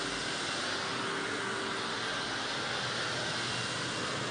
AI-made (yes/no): no